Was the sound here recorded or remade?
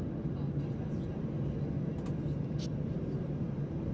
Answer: recorded